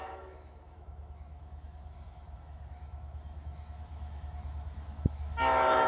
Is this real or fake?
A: fake